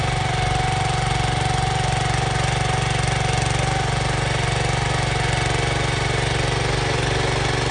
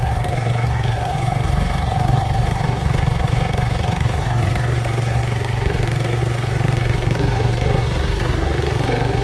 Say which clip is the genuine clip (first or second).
first